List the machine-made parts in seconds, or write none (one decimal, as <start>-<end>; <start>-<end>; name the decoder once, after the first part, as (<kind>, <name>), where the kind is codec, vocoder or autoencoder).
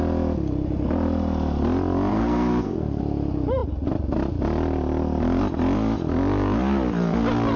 2.1-3.0 (codec, SNAC)